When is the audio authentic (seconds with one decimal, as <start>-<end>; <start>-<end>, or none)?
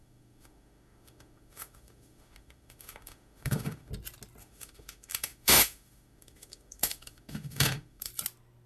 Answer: 3.9-4.4; 8.1-8.7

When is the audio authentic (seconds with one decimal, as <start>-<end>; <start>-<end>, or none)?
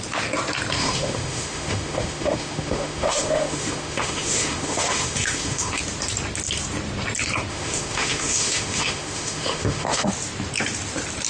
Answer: 0.0-0.8; 5.8-7.5; 10.1-11.3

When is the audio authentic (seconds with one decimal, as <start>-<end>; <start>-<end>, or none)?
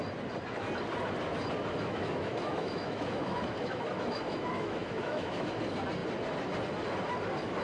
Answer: 0.0-1.8; 5.5-7.6